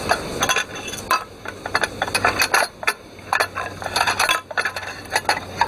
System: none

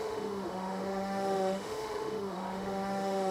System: autoencoder, DAC-VAE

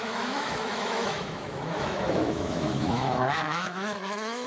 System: autoencoder, DAC-VAE